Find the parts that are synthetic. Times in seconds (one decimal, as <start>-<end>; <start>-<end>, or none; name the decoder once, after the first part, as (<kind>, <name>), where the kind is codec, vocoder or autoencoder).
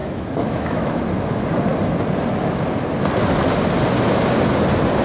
0.0-1.0 (autoencoder, DAC-VAE)